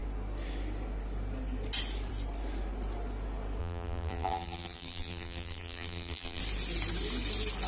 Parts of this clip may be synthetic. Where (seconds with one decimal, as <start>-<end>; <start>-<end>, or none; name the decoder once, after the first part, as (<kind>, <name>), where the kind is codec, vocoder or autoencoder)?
3.6-6.4 (vocoder, BigVGAN v2)